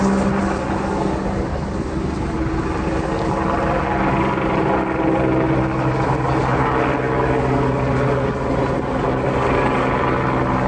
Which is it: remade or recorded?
recorded